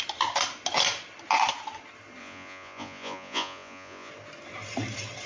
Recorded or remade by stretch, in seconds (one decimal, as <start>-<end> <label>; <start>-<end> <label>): 0.0-2.2 recorded; 2.2-4.1 remade; 4.1-5.3 recorded